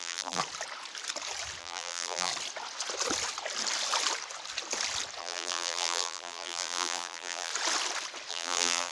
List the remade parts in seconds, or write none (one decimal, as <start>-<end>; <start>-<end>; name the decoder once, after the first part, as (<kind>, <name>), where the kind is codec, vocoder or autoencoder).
0.0-0.4 (vocoder, BigVGAN v2); 1.6-2.3; 5.2-7.5; 8.3-8.9

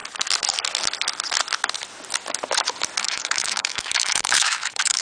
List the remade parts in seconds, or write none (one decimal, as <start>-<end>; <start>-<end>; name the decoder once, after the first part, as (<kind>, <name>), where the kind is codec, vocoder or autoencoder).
3.0-5.0 (autoencoder, DAC-VAE)

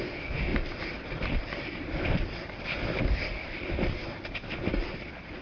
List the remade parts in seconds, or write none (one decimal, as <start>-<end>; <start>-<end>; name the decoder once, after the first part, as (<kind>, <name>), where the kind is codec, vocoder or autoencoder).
0.5-3.7 (vocoder, BigVGAN v2)

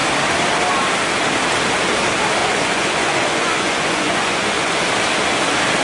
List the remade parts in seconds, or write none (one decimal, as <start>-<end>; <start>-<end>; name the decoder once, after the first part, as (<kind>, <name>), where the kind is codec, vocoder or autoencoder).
2.4-4.9 (vocoder, Vocos)

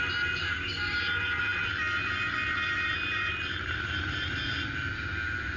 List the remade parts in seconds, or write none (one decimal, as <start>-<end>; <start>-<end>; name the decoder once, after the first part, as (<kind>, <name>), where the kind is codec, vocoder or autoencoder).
0.4-1.0 (codec, DAC)

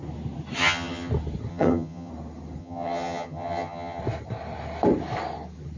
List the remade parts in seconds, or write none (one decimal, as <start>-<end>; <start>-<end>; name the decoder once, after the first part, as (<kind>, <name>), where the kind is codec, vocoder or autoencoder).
0.6-1.1 (vocoder, HiFi-GAN); 1.5-2.1; 2.6-4.0

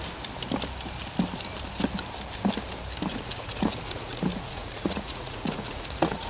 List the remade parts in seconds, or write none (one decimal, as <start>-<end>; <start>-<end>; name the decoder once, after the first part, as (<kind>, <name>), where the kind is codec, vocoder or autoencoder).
3.1-6.3 (vocoder, Vocos)